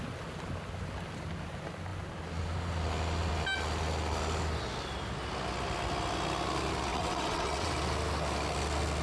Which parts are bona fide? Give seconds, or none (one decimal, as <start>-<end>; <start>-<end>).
0.0-6.9; 7.7-9.0